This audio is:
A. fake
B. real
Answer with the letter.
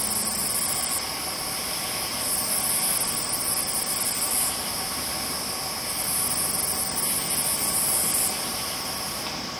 B